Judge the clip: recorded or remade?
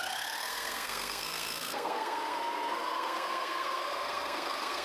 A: remade